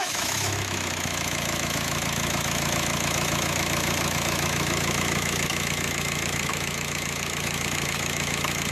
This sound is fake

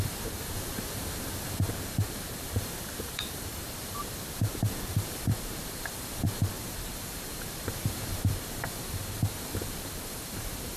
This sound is fake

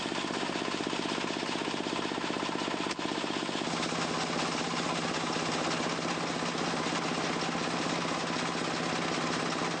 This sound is real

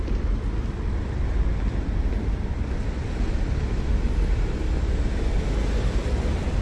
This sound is real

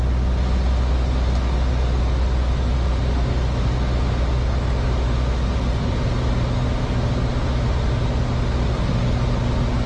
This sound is real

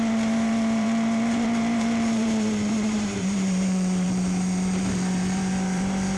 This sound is fake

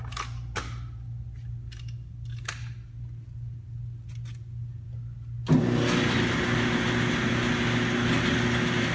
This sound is real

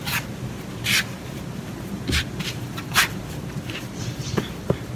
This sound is fake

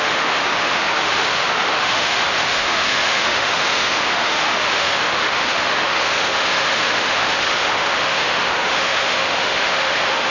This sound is fake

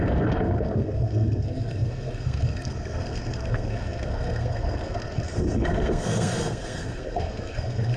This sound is fake